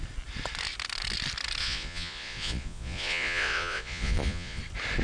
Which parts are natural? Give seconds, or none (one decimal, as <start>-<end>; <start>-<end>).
0.0-1.6; 4.6-5.0